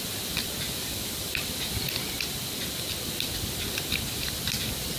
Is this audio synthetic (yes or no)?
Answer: no